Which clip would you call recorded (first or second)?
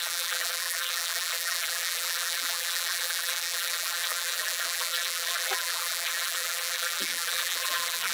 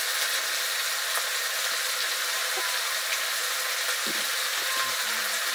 second